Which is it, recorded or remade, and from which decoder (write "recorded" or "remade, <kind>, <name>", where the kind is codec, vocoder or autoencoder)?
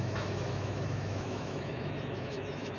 remade, autoencoder, DAC-VAE